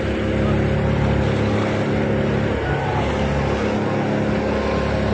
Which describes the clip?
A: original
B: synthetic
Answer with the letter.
A